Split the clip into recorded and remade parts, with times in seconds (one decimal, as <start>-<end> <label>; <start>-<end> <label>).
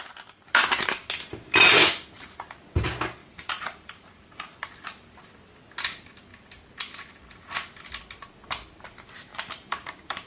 0.0-3.2 recorded; 3.2-4.7 remade; 4.7-9.3 recorded; 9.3-10.3 remade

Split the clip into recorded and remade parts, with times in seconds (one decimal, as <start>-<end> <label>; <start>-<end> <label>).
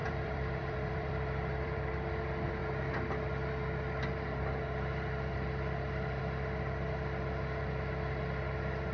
0.0-1.9 remade; 1.9-8.9 recorded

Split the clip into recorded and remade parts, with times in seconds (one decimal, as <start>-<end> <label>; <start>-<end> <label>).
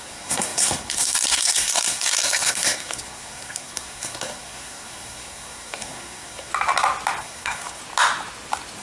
0.0-6.5 remade; 6.5-7.2 recorded; 7.2-7.8 remade; 7.8-8.8 recorded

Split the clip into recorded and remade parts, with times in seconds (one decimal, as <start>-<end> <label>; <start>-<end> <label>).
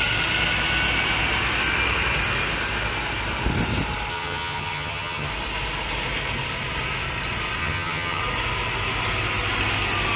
0.0-4.1 recorded; 4.1-5.3 remade; 5.3-7.6 recorded; 7.6-8.2 remade; 8.2-10.2 recorded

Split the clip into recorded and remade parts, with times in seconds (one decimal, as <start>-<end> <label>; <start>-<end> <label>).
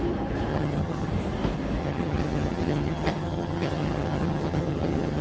0.0-0.5 recorded; 0.5-1.1 remade; 1.1-1.8 recorded; 1.8-5.2 remade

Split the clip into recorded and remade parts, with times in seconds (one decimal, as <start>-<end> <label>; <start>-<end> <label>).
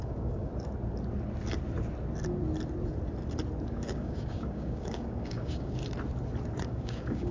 0.0-0.5 remade; 0.5-3.7 recorded; 3.7-5.8 remade; 5.8-6.6 recorded; 6.6-7.3 remade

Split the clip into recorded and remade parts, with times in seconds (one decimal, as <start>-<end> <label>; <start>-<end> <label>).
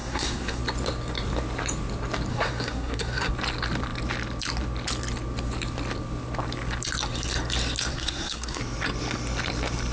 0.0-0.6 remade; 0.6-2.3 recorded; 2.3-3.3 remade; 3.3-7.9 recorded; 7.9-8.6 remade; 8.6-9.9 recorded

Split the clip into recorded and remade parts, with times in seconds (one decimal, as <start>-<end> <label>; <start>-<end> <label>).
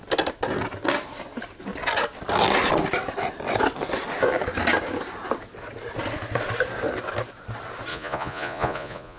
0.0-7.9 recorded; 7.9-9.2 remade